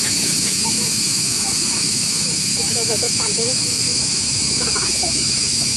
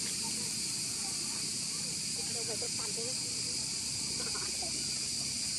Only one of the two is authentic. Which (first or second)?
second